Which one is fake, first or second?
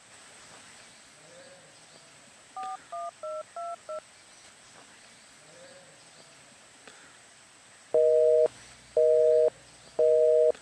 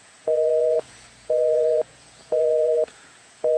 second